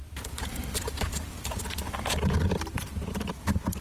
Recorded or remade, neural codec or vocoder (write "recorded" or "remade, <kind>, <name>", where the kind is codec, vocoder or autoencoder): remade, vocoder, BigVGAN v2